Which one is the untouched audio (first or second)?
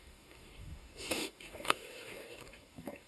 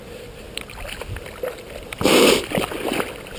second